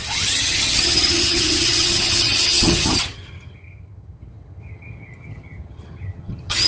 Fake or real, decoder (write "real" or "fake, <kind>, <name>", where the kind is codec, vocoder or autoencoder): fake, vocoder, HiFi-GAN